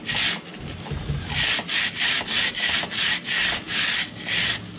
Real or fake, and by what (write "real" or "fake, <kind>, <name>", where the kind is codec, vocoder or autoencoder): real